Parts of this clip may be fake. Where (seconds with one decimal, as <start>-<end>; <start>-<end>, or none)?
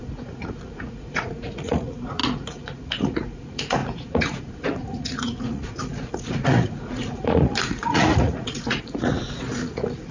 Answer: 0.0-10.1